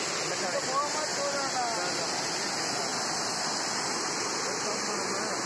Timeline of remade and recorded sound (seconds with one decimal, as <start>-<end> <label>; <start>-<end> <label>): 0.0-5.5 recorded